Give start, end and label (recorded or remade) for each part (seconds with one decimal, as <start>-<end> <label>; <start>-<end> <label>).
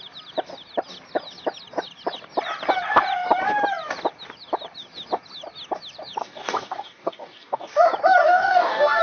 0.0-6.2 recorded; 6.2-7.7 remade; 7.7-8.2 recorded; 8.2-9.0 remade